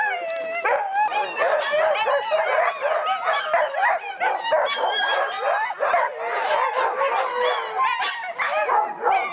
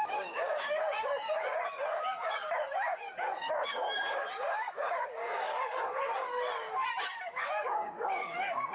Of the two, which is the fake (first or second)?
second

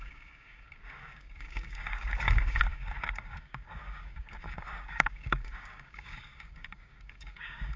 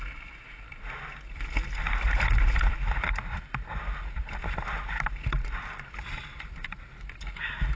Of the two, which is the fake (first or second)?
first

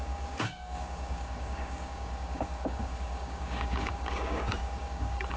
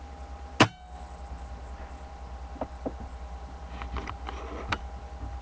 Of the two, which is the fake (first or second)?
first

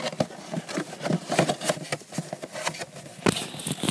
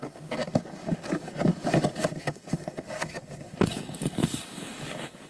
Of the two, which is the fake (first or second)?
second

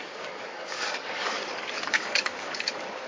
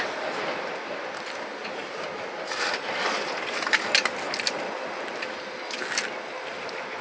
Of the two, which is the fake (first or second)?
first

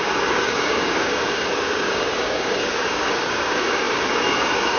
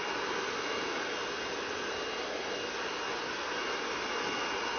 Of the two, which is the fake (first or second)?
first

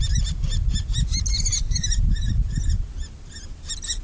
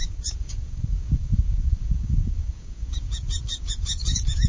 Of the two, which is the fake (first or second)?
second